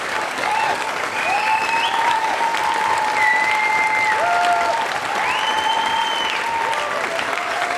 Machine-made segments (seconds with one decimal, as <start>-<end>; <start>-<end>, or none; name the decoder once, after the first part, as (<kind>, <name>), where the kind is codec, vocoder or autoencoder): 0.0-1.6 (codec, DAC); 2.1-2.5; 7.2-7.8